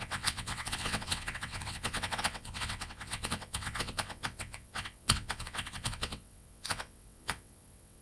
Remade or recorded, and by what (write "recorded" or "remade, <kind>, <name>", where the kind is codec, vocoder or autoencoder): remade, vocoder, WaveNeXt